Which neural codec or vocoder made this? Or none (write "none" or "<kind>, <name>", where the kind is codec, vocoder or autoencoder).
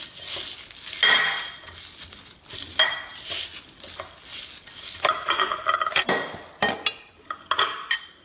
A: none